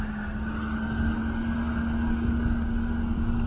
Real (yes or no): yes